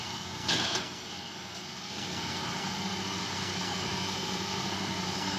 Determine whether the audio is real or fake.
fake